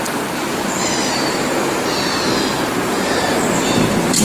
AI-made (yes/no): yes